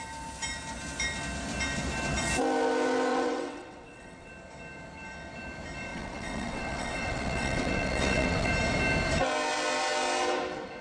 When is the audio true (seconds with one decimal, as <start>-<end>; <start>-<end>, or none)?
0.0-3.1; 4.3-5.9; 8.5-10.8